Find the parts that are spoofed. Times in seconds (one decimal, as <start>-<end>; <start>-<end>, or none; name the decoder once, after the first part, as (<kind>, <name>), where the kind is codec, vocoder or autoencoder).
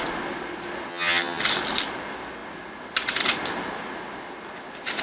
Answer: 0.9-1.4 (vocoder, HiFi-GAN)